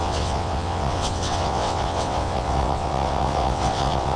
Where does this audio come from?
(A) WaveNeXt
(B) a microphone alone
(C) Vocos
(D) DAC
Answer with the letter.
A